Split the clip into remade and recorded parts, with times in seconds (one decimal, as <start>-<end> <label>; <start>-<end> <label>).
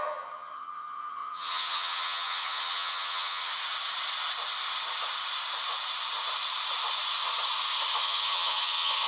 0.0-3.5 remade; 3.5-8.0 recorded; 8.0-9.1 remade